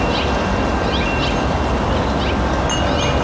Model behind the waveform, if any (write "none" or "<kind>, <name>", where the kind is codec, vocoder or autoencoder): none